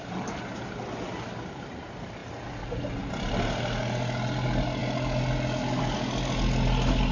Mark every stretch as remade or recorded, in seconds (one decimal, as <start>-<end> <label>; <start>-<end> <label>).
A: 0.0-7.1 recorded